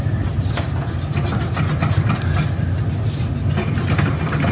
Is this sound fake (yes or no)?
no